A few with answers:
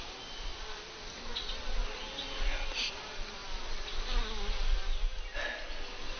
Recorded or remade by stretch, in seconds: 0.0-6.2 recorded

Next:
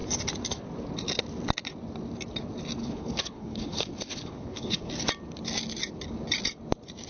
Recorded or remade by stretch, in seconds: 0.0-2.8 recorded; 2.8-4.9 remade; 4.9-7.1 recorded

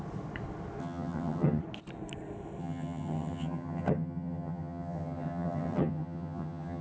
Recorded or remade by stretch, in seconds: 0.0-0.8 recorded; 0.8-1.6 remade; 1.6-2.6 recorded; 2.6-6.8 remade